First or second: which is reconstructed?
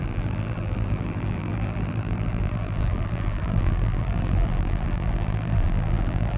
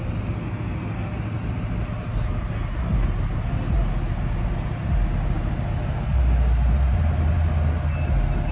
first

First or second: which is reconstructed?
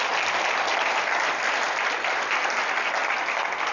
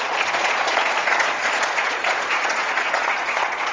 second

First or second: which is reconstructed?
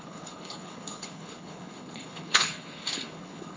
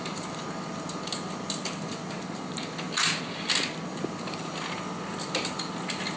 first